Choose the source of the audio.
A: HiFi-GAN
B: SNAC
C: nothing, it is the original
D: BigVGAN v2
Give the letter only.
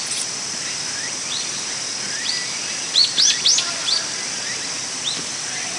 C